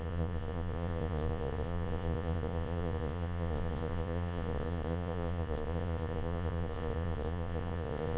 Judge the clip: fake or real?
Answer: fake